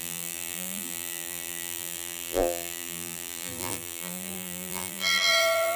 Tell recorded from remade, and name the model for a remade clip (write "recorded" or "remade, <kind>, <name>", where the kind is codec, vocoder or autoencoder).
remade, vocoder, BigVGAN v2